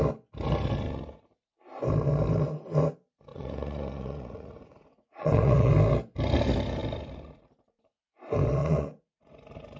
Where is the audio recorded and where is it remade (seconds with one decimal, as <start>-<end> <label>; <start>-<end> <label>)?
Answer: 0.0-3.3 recorded; 3.3-5.7 remade; 5.7-8.6 recorded; 8.6-9.3 remade; 9.3-9.8 recorded